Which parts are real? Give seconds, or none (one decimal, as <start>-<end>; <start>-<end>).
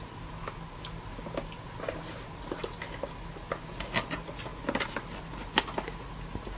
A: 0.0-6.6